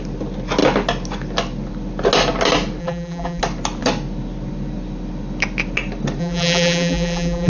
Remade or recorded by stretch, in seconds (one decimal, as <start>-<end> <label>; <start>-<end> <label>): 0.0-2.8 recorded; 2.8-3.4 remade; 3.4-6.2 recorded; 6.2-7.5 remade